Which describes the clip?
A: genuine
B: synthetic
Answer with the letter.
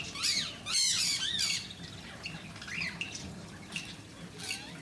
A